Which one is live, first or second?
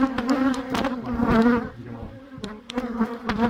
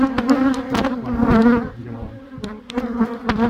second